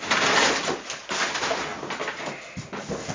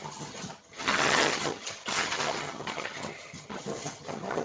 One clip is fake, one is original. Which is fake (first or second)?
second